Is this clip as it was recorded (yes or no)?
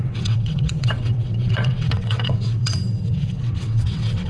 no